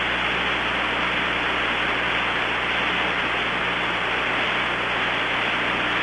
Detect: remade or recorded recorded